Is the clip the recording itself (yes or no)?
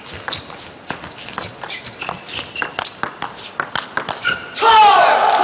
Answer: yes